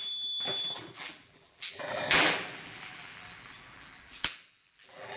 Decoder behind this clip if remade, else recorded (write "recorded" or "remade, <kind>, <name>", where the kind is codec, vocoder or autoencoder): remade, vocoder, BigVGAN v2